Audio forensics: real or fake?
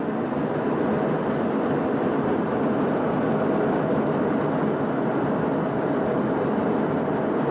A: real